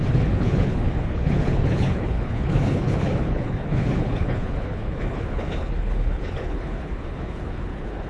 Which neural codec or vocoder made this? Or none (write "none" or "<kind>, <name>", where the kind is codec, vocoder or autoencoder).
codec, HILCodec